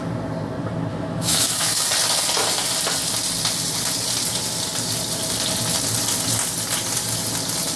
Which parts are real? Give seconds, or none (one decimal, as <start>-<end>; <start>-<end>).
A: 0.0-0.9; 1.8-7.8